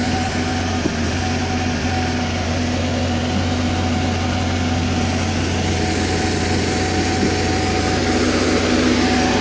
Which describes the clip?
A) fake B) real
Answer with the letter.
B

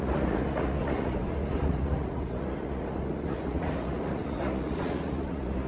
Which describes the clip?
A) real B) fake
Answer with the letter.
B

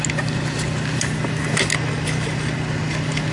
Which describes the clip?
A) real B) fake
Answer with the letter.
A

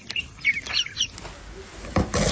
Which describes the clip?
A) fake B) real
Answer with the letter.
B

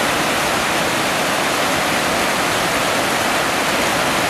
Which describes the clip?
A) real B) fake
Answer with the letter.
A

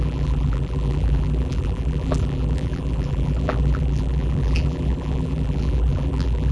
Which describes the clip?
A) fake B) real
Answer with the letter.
A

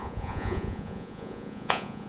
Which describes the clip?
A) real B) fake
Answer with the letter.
B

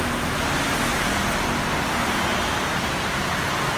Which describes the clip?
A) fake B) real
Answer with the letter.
B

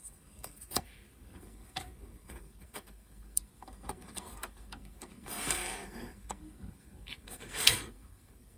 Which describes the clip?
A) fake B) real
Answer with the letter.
A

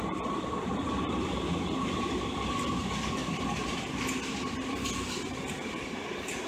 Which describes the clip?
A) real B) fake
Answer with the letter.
A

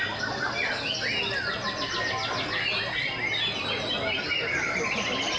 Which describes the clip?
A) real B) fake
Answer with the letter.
A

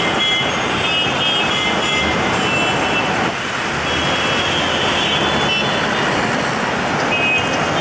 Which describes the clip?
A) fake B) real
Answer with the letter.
B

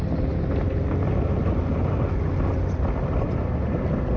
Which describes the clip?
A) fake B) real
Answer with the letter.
B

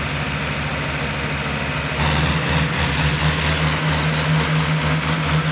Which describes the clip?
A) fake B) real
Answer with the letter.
B